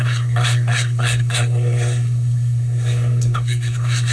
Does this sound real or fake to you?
fake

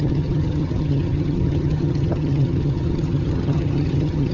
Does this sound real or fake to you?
fake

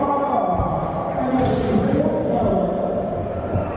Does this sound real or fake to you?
fake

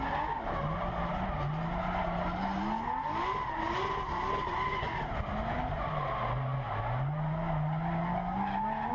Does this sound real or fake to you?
real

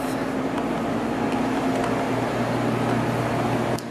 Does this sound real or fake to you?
real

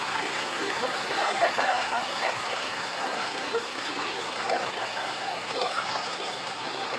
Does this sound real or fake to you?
fake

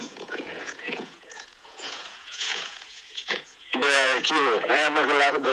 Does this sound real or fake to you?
fake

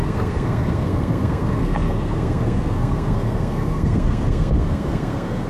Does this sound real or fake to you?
fake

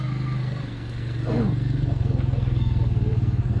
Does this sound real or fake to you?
fake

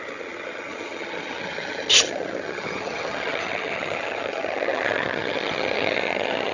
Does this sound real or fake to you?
fake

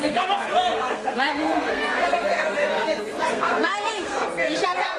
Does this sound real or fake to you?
fake